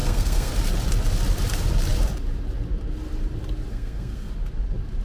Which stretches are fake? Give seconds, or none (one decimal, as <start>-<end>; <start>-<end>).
0.0-0.5; 3.7-4.3